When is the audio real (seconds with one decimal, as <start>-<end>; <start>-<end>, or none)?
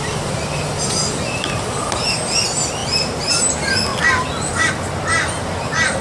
0.0-2.8; 3.5-6.0